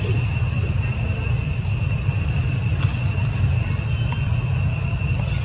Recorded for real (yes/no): yes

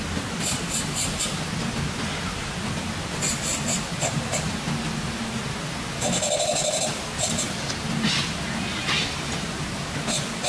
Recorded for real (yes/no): yes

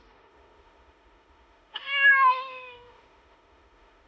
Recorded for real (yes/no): no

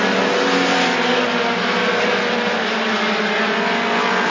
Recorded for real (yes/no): yes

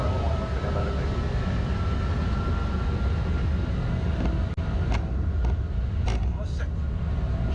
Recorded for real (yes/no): yes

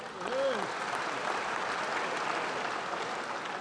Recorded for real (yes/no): yes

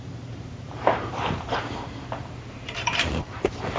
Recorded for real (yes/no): no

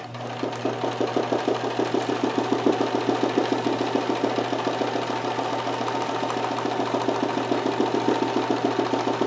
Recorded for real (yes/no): yes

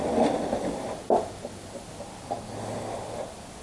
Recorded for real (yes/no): yes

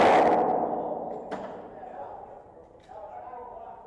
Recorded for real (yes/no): yes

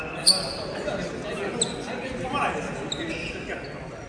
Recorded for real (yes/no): yes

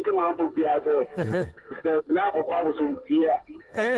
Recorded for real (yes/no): no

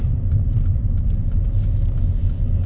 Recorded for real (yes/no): no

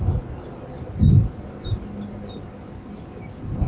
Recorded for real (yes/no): yes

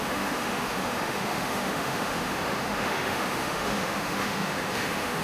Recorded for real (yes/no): no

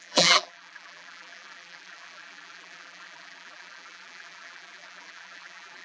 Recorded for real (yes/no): no